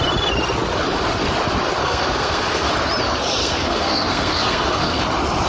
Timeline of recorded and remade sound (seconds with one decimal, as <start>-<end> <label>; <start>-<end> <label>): 0.0-1.8 recorded; 1.8-2.7 remade; 2.7-3.4 recorded; 3.4-5.0 remade; 5.0-5.5 recorded